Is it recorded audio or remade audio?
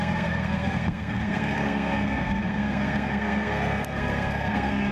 remade